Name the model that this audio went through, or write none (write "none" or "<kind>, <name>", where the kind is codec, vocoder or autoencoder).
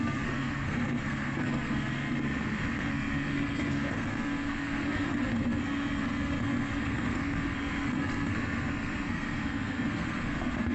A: codec, SNAC